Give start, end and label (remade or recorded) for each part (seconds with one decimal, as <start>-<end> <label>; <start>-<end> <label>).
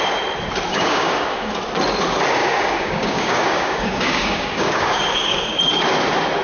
0.0-0.7 recorded; 0.7-1.5 remade; 1.5-2.4 recorded; 2.4-5.6 remade; 5.6-6.4 recorded